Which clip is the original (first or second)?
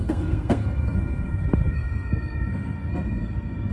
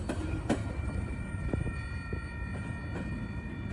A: second